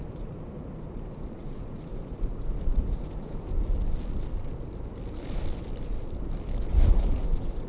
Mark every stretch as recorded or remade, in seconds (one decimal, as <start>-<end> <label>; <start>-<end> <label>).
0.0-3.5 remade; 3.5-6.7 recorded; 6.7-7.7 remade